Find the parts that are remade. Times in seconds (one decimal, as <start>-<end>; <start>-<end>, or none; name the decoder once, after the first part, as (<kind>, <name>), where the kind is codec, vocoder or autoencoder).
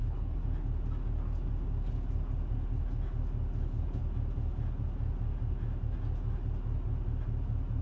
0.0-0.4 (codec, HILCodec); 3.6-4.0